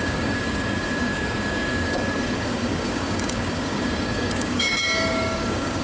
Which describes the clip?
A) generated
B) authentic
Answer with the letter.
A